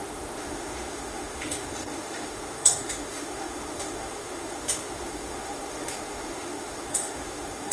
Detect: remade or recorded remade